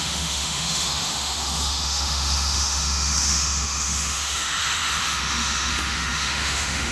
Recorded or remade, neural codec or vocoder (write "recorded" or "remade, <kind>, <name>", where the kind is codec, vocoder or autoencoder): remade, autoencoder, DAC-VAE